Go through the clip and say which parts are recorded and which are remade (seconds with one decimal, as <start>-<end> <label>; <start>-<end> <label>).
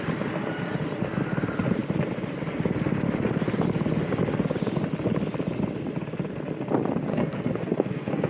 0.0-7.1 recorded; 7.1-8.3 remade